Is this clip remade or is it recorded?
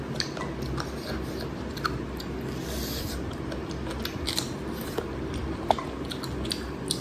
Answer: recorded